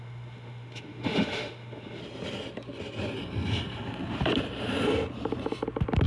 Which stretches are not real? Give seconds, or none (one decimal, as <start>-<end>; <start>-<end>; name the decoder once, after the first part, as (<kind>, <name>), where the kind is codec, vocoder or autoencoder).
0.0-2.0 (autoencoder, DAC-VAE)